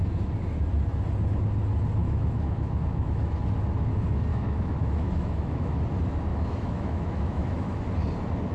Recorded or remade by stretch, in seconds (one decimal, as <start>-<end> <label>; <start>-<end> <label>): 0.0-2.0 recorded; 2.0-3.3 remade; 3.3-4.3 recorded; 4.3-5.7 remade; 5.7-6.3 recorded; 6.3-7.8 remade; 7.8-8.5 recorded